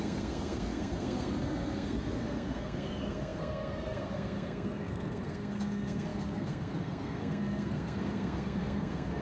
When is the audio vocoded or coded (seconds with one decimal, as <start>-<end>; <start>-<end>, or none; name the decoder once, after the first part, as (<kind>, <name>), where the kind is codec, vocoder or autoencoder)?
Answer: 0.0-9.2 (codec, SNAC)